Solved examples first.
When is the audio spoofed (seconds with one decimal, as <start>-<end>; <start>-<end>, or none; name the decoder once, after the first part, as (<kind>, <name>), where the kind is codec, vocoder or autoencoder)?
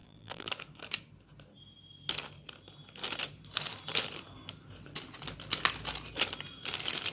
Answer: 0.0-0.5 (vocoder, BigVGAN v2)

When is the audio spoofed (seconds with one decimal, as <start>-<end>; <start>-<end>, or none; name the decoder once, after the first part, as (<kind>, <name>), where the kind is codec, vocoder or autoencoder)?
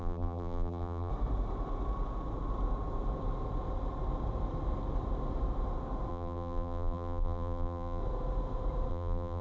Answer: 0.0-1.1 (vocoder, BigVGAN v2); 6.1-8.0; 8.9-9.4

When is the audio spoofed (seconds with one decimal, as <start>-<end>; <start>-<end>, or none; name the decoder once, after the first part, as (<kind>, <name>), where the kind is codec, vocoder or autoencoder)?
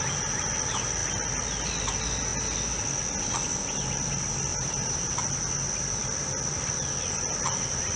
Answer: 4.5-5.2 (vocoder, BigVGAN v2)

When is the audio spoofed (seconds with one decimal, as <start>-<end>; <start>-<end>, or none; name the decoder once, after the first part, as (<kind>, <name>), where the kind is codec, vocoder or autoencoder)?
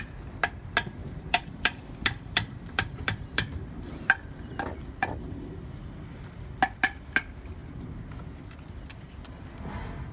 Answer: 1.0-5.8 (vocoder, BigVGAN v2)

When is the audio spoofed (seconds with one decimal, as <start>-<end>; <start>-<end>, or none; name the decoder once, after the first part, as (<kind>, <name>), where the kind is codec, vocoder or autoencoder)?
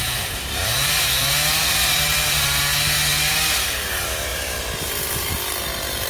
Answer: 0.0-2.6 (vocoder, BigVGAN v2); 3.9-6.1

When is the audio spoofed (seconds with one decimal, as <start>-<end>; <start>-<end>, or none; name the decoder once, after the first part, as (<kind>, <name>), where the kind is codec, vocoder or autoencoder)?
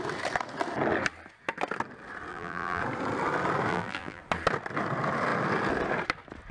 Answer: 2.3-2.8 (vocoder, BigVGAN v2); 3.7-4.2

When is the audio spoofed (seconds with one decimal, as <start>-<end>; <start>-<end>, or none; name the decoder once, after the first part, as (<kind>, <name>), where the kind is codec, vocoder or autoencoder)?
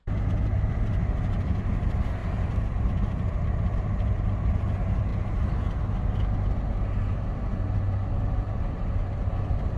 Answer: 2.2-4.1 (vocoder, BigVGAN v2); 8.0-9.3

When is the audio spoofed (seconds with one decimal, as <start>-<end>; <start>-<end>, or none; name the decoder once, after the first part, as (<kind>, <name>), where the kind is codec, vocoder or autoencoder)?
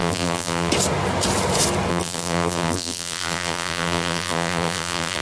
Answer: 0.0-0.7 (vocoder, BigVGAN v2); 1.9-5.2